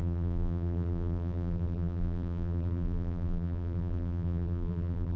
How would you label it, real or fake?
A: fake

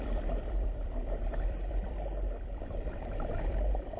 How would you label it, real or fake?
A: fake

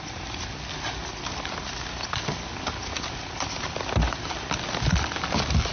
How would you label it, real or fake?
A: real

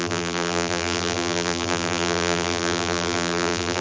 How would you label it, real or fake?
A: fake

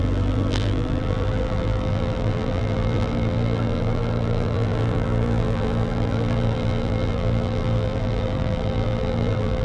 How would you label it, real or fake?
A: fake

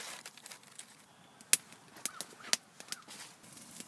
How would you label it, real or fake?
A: real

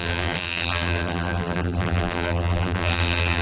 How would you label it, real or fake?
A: fake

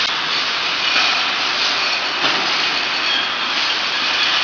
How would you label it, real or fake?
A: real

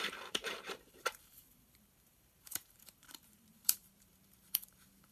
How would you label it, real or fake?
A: fake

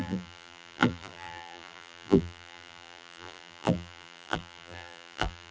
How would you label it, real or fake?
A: fake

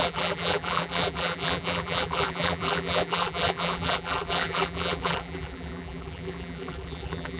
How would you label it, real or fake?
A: fake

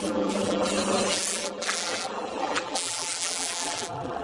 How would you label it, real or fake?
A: fake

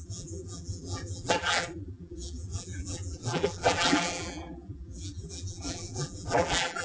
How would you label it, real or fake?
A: fake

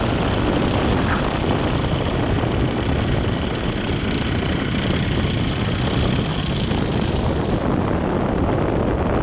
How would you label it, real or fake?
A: real